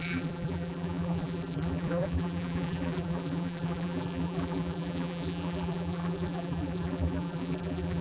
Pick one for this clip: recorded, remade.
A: remade